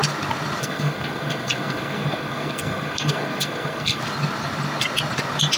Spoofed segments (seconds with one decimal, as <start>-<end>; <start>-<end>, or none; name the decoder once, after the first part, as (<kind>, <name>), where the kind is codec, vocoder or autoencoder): 0.6-4.0 (codec, SNAC)